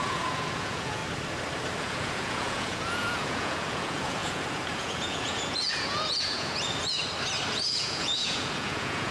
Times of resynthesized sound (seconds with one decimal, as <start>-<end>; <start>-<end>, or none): 0.0-1.0; 1.8-7.0; 7.5-9.1